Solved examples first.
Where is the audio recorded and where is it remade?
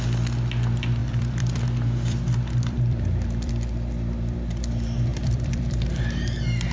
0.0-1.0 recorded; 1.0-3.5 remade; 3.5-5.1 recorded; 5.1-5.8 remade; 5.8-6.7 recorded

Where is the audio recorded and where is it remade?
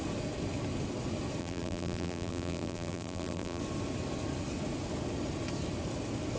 0.0-1.4 recorded; 1.4-3.6 remade; 3.6-6.4 recorded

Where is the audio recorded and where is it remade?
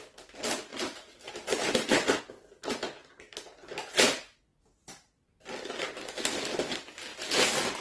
0.0-0.7 recorded; 0.7-2.2 remade; 2.2-7.8 recorded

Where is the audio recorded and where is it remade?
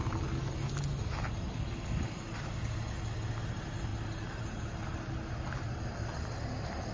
0.0-6.9 recorded